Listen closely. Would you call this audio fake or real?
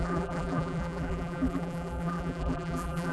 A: fake